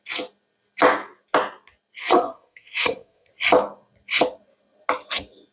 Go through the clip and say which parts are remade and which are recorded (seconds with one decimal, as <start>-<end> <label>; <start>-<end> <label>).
0.0-2.1 recorded; 2.1-3.3 remade; 3.3-5.5 recorded